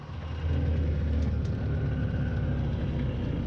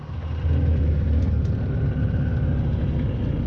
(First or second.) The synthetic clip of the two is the second